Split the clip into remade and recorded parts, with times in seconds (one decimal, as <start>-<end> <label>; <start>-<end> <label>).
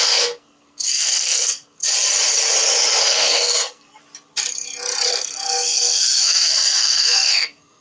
0.0-1.8 remade; 1.8-3.0 recorded; 3.0-4.0 remade; 4.0-5.1 recorded; 5.1-7.8 remade